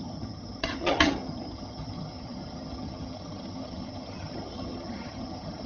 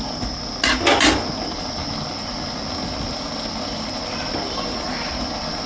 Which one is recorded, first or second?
second